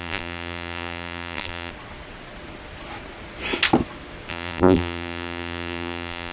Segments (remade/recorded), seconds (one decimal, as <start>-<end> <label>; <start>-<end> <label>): 0.0-1.7 remade; 1.7-4.3 recorded; 4.3-6.3 remade